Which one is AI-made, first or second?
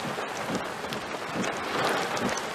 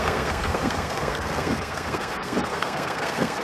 second